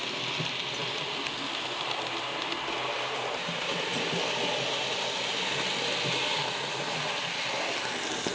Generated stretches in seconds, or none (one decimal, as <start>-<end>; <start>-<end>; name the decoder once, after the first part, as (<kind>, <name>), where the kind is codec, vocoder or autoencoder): 6.2-7.1 (vocoder, Vocos)